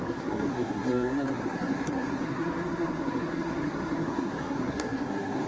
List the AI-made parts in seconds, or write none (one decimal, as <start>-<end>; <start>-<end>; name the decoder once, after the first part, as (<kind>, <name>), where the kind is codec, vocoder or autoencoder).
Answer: 0.0-5.5 (codec, SNAC)